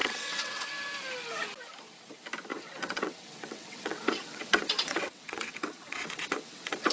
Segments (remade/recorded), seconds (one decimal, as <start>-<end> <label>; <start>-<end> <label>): 0.0-0.7 remade; 0.7-2.5 recorded; 2.5-6.9 remade